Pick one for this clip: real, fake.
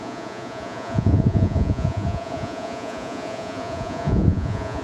fake